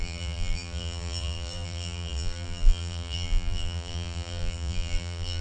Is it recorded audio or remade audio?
remade